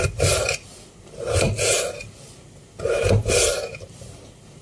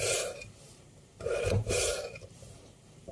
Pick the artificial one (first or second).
second